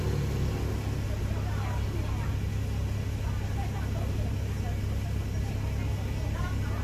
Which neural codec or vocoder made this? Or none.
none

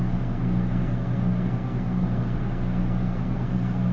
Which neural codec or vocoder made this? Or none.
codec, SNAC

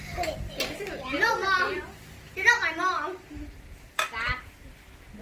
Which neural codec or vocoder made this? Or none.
none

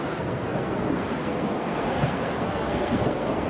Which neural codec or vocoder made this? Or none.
codec, SNAC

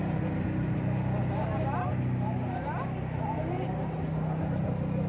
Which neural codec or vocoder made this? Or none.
none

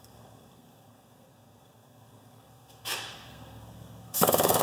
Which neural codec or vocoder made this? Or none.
codec, SNAC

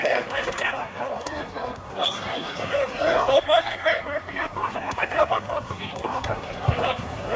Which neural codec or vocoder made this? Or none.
codec, SNAC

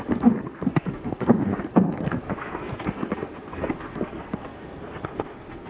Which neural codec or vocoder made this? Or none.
codec, SNAC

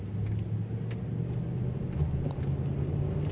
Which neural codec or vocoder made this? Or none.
none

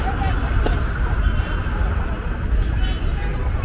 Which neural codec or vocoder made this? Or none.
none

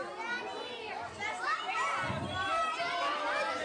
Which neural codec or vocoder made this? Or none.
none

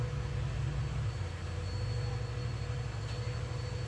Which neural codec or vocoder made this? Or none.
none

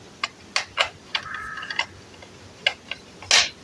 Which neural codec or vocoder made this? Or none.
none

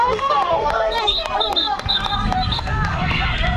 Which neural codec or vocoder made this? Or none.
codec, SNAC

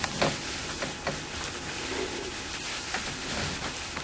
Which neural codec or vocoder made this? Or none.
none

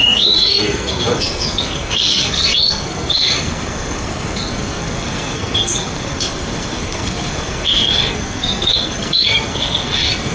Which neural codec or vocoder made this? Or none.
codec, SNAC